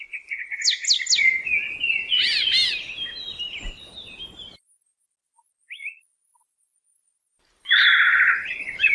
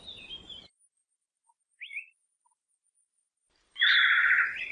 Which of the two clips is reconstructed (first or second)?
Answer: second